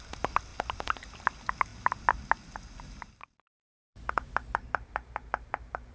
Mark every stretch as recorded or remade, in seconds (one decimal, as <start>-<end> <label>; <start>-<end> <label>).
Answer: 0.0-3.6 recorded; 3.6-4.3 remade; 4.3-5.9 recorded